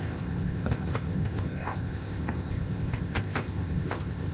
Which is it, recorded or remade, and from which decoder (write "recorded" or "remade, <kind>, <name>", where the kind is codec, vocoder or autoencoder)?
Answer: remade, codec, ZipCodec